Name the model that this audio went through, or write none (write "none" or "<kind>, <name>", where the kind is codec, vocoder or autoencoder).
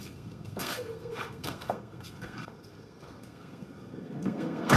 codec, SNAC